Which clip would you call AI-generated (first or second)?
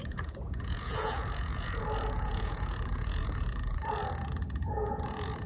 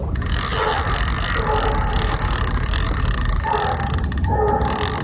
first